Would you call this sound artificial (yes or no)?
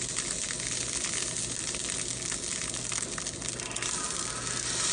no